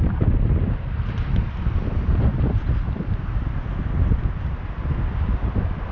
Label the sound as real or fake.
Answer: real